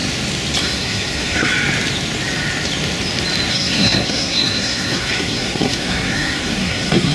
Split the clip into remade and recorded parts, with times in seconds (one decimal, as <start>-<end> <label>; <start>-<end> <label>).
0.0-0.6 recorded; 0.6-1.5 remade; 1.5-3.5 recorded; 3.5-7.1 remade